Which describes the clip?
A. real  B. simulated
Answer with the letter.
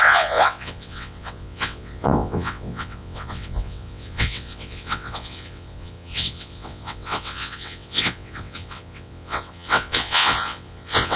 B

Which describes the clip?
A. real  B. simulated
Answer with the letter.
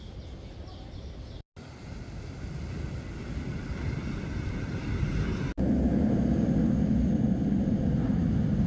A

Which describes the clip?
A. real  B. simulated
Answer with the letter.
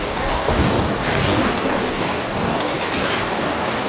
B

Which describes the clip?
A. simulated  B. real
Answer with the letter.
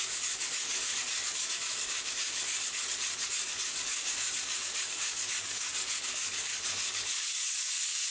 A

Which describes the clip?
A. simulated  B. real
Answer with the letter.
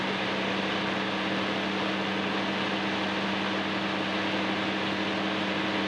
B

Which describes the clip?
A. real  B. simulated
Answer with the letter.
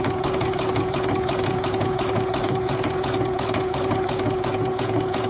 B